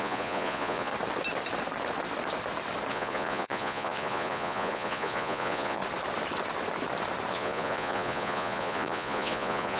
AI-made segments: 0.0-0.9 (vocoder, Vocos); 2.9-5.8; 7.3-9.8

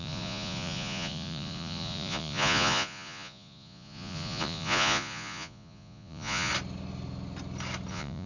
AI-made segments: 0.0-6.5 (vocoder, Vocos); 7.9-8.3

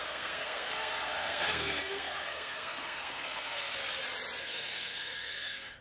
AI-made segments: 0.0-3.8 (codec, SNAC); 4.4-5.8

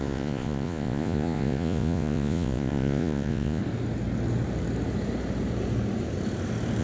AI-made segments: 0.0-3.6 (vocoder, Vocos)

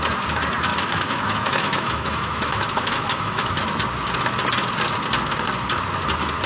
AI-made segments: 0.7-3.5 (autoencoder, DAC-VAE)

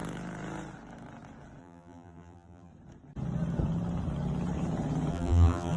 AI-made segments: 1.6-2.7 (vocoder, BigVGAN v2); 5.1-5.8

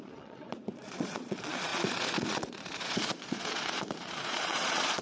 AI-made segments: 0.0-5.0 (vocoder, Vocos)